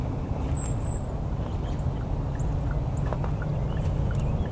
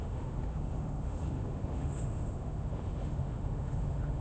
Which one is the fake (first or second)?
second